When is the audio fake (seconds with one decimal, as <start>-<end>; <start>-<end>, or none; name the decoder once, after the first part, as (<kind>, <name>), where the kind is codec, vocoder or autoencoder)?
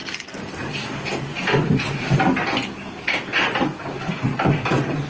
none